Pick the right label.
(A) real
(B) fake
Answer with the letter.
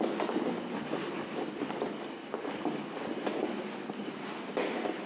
A